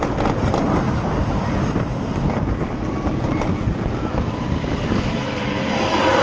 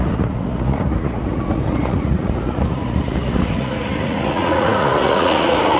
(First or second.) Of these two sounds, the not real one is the second